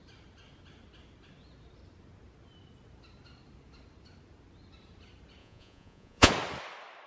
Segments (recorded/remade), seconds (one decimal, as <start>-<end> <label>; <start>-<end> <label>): 0.0-5.4 recorded; 5.4-6.3 remade; 6.3-7.1 recorded